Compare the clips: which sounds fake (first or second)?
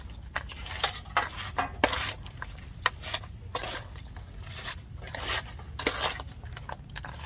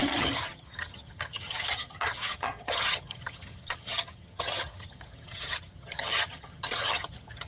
second